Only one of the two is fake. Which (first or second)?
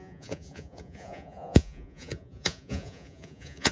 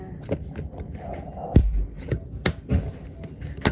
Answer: first